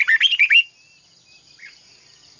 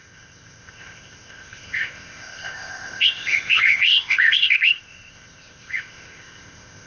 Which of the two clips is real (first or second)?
first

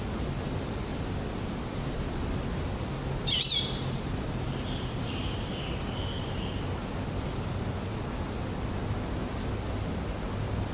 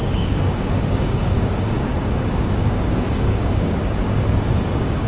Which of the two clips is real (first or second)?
first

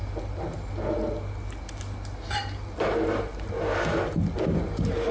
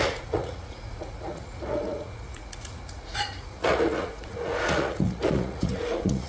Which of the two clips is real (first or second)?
first